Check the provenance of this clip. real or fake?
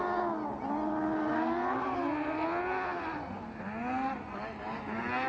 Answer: real